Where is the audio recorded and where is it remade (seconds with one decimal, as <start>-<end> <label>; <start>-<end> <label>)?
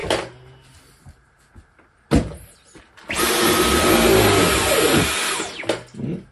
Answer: 0.0-6.3 recorded